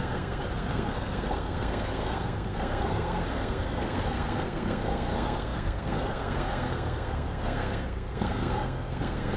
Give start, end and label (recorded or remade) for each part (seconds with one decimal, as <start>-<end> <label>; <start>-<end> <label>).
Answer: 0.0-9.4 remade